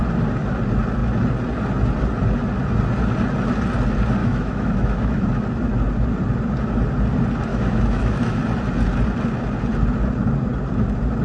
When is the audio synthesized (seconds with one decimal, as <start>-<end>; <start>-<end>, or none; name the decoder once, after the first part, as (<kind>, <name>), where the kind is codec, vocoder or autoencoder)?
4.2-5.3 (autoencoder, DAC-VAE); 7.5-8.4